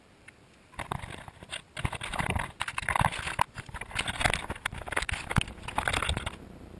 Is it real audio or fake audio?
real